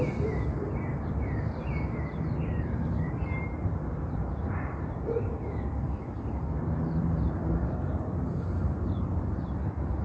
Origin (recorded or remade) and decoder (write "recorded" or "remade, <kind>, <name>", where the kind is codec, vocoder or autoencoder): remade, vocoder, BigVGAN v2